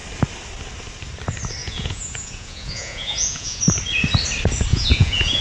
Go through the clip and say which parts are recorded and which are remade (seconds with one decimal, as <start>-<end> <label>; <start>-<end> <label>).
0.0-1.6 recorded; 1.6-3.6 remade; 3.6-4.7 recorded; 4.7-5.4 remade